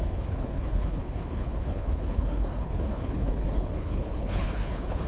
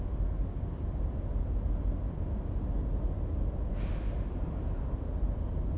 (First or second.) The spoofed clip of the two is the first